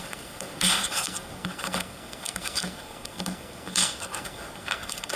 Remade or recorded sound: remade